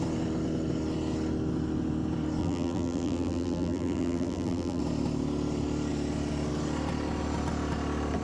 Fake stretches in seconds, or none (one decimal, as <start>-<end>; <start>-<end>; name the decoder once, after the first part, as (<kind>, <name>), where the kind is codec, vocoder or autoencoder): 2.4-4.8 (vocoder, BigVGAN v2)